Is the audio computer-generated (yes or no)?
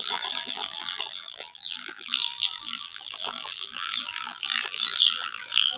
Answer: yes